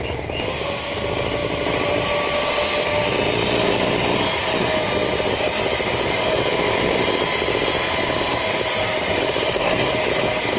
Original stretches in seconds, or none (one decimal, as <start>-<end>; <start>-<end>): 0.0-10.6